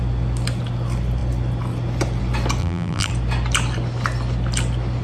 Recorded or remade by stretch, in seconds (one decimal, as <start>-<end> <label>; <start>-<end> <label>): 0.0-2.6 recorded; 2.6-3.1 remade; 3.1-5.0 recorded